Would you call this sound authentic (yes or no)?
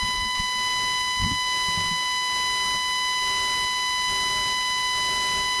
yes